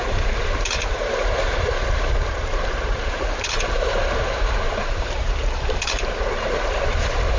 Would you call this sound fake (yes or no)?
yes